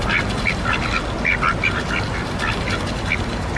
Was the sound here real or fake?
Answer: real